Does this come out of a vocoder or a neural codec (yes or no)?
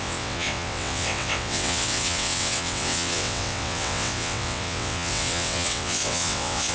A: yes